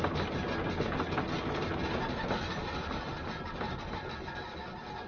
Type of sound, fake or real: real